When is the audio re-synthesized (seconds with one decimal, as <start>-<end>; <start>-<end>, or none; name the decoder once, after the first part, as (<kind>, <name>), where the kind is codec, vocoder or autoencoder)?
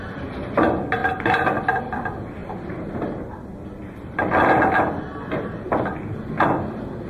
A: 2.4-5.9 (vocoder, BigVGAN v2)